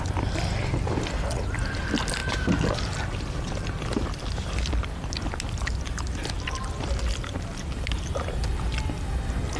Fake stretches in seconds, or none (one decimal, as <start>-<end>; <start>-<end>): none